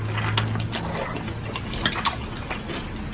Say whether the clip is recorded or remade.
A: recorded